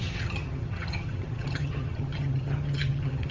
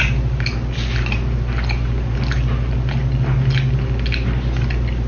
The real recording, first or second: second